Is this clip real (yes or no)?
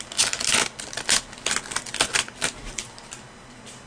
yes